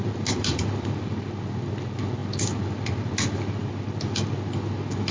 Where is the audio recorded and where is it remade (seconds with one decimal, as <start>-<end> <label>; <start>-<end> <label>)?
0.0-5.1 recorded